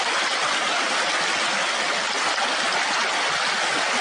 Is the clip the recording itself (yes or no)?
yes